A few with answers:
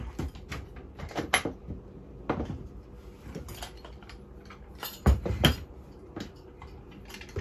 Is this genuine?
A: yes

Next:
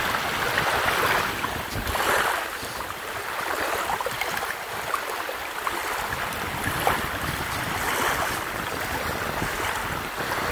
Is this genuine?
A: yes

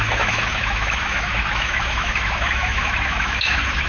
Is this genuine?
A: no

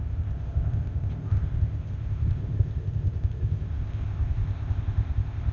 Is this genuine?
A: no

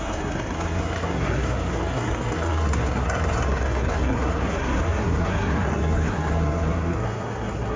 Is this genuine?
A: no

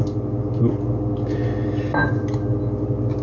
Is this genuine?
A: yes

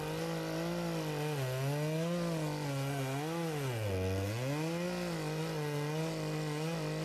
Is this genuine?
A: yes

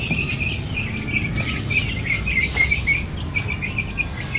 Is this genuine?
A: yes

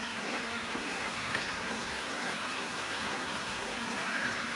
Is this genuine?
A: no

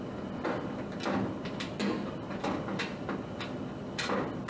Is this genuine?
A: yes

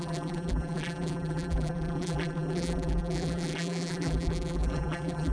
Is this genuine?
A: no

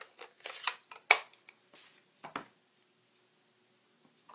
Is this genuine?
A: yes